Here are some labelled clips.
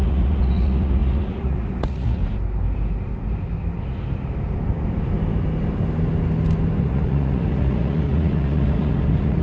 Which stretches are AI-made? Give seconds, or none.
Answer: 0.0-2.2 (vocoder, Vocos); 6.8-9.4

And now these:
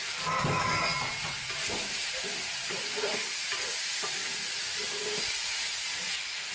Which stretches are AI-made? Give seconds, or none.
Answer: none

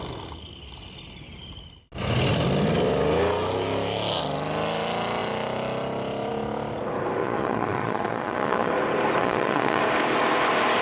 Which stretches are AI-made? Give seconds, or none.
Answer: 7.2-8.7 (vocoder, Vocos); 9.2-9.8

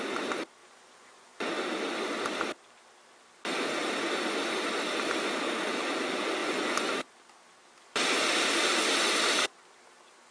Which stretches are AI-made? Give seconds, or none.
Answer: 0.6-1.5 (vocoder, Vocos); 6.4-6.9